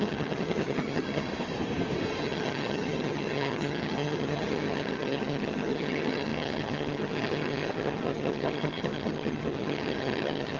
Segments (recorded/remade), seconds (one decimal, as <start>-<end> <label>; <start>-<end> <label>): 0.0-1.3 remade; 1.3-2.2 recorded; 2.2-10.6 remade